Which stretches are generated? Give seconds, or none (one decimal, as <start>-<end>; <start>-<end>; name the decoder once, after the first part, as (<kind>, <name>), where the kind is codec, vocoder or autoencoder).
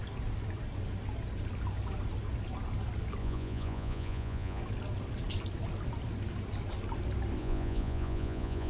3.2-4.6 (vocoder, Vocos); 7.4-8.7